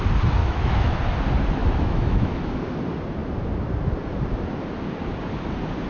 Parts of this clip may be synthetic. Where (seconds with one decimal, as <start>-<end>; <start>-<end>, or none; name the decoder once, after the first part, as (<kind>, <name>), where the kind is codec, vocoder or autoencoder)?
0.4-1.0 (autoencoder, DAC-VAE); 1.6-2.5